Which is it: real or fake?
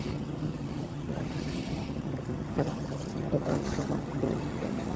fake